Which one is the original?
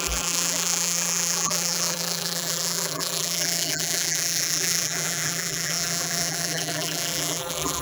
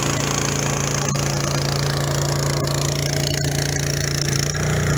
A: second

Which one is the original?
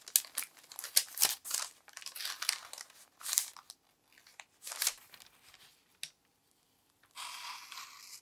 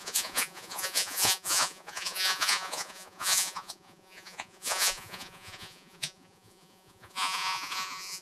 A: first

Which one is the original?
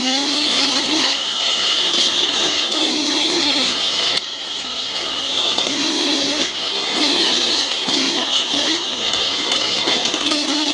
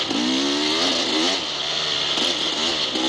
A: second